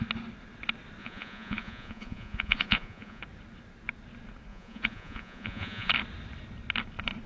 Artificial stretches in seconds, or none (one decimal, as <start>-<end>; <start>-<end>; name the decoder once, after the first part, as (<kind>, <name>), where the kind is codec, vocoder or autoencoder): 1.0-3.2 (vocoder, Vocos); 4.5-5.9